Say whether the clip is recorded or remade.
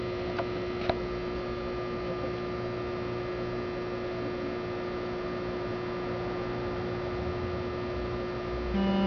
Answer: recorded